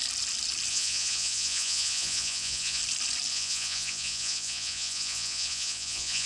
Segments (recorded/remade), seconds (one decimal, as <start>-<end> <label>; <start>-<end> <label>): 0.0-0.7 recorded; 0.7-2.8 remade; 2.8-3.3 recorded; 3.3-6.3 remade